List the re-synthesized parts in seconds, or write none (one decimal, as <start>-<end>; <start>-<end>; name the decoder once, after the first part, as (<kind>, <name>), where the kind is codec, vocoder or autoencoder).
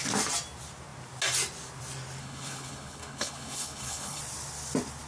2.2-4.2 (codec, HILCodec)